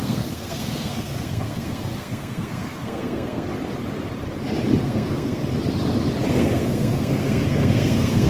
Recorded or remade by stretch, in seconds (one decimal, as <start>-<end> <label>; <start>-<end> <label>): 0.0-3.5 remade; 3.5-4.8 recorded; 4.8-5.4 remade; 5.4-6.3 recorded; 6.3-8.3 remade